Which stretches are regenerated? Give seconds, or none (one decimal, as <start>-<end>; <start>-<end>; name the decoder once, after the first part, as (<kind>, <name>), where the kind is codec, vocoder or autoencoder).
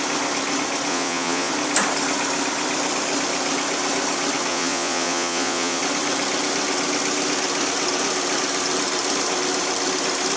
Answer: 0.9-1.5 (vocoder, Vocos); 4.5-5.8